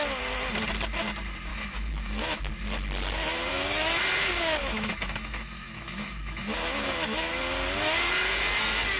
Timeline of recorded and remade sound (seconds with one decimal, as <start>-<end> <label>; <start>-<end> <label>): 0.0-1.5 recorded; 1.5-2.5 remade; 2.5-3.5 recorded; 3.5-4.0 remade; 4.0-4.6 recorded; 4.6-7.3 remade; 7.3-9.0 recorded